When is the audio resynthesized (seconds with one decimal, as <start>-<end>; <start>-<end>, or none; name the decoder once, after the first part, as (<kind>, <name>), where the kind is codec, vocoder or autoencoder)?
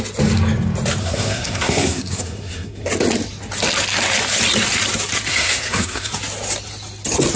1.0-2.9 (codec, SNAC); 5.3-6.1